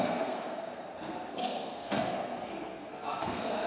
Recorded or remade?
remade